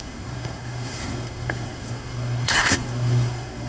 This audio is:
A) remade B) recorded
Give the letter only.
A